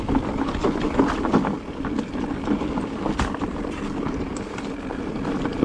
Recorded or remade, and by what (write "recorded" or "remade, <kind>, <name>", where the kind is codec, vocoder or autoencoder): remade, vocoder, BigVGAN v2